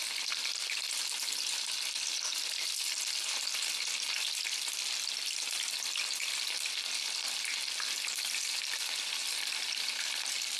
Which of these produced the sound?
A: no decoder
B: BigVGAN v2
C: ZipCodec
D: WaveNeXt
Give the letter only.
A